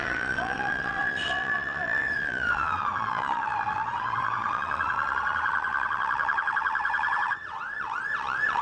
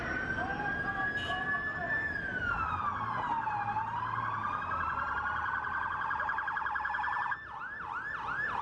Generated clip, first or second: first